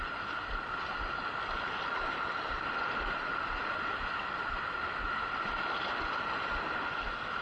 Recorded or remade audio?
recorded